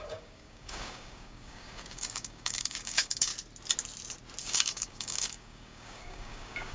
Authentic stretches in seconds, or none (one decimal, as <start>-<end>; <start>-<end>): 3.3-4.4